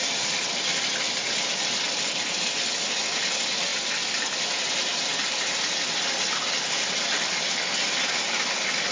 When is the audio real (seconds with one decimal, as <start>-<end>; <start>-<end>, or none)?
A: 0.0-3.7; 5.5-7.8